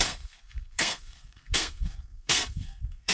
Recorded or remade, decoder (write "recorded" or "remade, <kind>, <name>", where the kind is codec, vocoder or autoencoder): remade, codec, SNAC